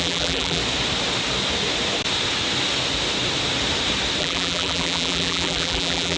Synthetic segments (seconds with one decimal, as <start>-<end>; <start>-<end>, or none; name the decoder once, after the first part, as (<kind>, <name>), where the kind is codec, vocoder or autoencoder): 0.0-0.6 (vocoder, BigVGAN v2); 4.2-6.2